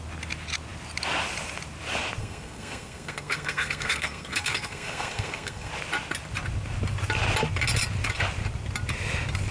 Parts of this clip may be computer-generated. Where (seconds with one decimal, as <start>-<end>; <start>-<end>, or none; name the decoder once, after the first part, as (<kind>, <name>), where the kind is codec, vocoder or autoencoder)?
2.2-5.7 (codec, SNAC)